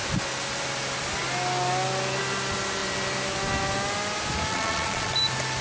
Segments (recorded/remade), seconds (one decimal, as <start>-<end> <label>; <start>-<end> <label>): 0.0-4.5 recorded; 4.5-5.1 remade; 5.1-5.6 recorded